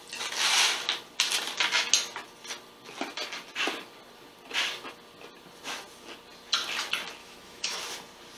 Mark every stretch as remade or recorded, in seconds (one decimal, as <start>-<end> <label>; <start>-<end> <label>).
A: 0.0-7.2 recorded; 7.2-7.8 remade; 7.8-8.4 recorded